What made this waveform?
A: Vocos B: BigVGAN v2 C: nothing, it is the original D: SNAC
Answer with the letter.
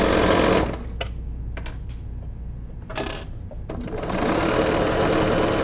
C